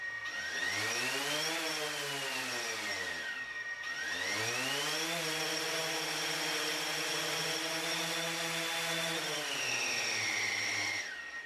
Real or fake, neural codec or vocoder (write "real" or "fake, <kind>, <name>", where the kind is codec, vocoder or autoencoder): real